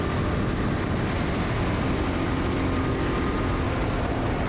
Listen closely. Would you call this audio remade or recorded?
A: recorded